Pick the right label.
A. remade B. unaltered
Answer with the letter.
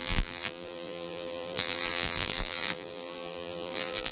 A